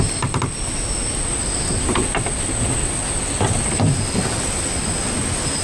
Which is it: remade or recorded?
recorded